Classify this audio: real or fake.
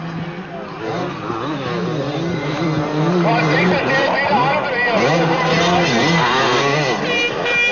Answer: real